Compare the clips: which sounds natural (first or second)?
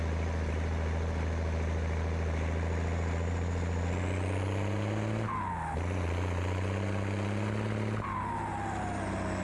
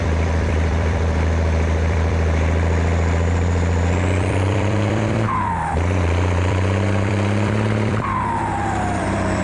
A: first